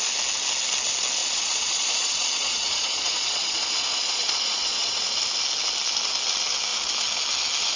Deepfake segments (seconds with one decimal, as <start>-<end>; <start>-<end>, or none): 1.2-5.2